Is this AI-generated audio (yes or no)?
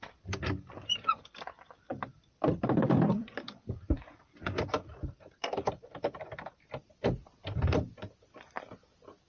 yes